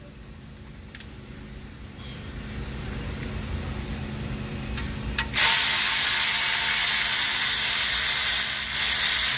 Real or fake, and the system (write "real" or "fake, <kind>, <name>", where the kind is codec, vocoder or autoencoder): real